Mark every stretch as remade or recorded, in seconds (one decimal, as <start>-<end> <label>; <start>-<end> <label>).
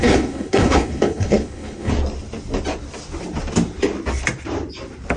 0.0-1.9 remade; 1.9-5.2 recorded